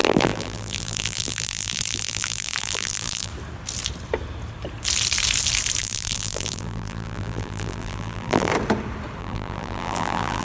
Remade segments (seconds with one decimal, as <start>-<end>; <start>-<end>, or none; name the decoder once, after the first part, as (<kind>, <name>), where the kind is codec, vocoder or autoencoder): 0.0-3.3 (vocoder, BigVGAN v2); 5.8-8.5; 9.2-10.4